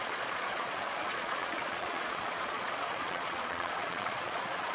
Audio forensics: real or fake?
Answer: fake